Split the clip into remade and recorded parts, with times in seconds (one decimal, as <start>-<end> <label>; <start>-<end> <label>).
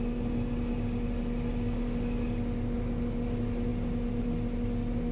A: 0.0-5.1 recorded